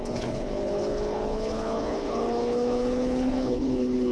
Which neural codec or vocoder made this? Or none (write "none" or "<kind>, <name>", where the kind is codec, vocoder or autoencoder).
codec, HILCodec